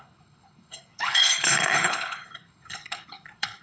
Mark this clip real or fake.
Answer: fake